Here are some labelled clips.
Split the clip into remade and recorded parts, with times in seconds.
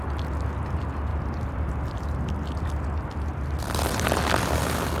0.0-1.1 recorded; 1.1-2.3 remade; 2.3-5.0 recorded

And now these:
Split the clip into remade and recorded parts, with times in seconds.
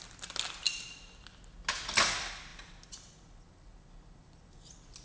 0.0-5.0 recorded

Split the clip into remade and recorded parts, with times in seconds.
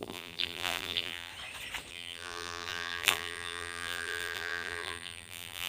0.0-1.3 remade; 1.3-1.9 recorded; 1.9-5.7 remade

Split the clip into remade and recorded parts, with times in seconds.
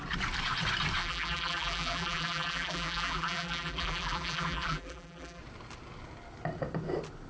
0.0-1.0 recorded; 1.0-5.4 remade; 5.4-7.3 recorded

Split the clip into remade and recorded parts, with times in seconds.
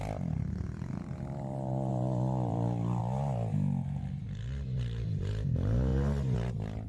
0.0-1.9 recorded; 1.9-3.0 remade; 3.0-5.9 recorded; 5.9-6.5 remade; 6.5-6.9 recorded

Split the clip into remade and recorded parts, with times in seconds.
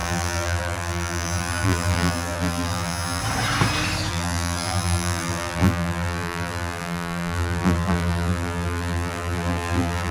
0.0-3.2 remade; 3.2-4.1 recorded; 4.1-10.1 remade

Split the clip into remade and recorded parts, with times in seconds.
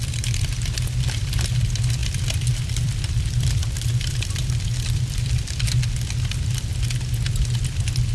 0.0-2.0 recorded; 2.0-5.4 remade; 5.4-8.1 recorded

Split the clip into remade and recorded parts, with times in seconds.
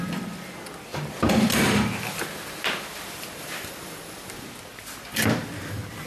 0.0-6.1 remade